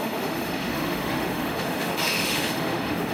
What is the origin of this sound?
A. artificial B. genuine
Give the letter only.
A